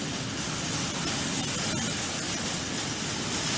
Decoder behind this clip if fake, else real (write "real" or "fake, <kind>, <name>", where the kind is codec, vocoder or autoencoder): real